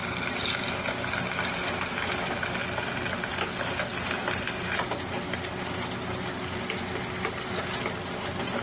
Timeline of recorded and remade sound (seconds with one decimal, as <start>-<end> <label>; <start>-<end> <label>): 0.0-8.6 recorded